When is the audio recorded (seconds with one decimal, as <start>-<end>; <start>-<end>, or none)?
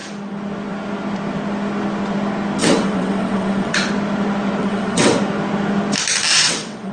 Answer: 0.0-2.6; 3.9-4.6; 5.2-6.3